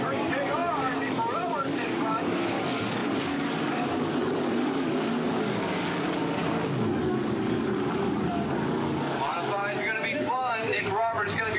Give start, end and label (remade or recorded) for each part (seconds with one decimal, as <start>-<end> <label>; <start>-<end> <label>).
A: 0.0-9.6 remade; 9.6-10.2 recorded; 10.2-11.6 remade